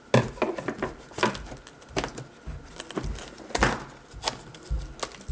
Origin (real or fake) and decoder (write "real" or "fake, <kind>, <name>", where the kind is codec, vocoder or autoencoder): real